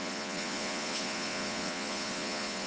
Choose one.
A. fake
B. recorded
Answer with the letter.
A